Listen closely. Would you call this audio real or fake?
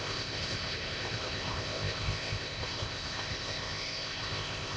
fake